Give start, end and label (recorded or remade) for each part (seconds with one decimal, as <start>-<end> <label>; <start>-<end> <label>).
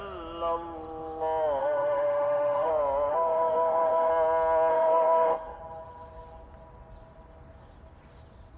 0.0-1.6 recorded; 1.6-2.7 remade; 2.7-3.1 recorded; 3.1-4.1 remade; 4.1-4.7 recorded; 4.7-5.6 remade; 5.6-8.6 recorded